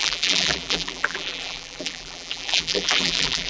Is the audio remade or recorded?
remade